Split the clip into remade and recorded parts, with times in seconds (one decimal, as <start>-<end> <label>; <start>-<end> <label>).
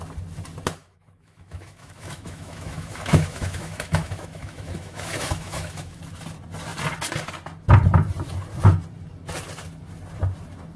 0.0-0.8 recorded; 0.8-6.0 remade; 6.0-10.8 recorded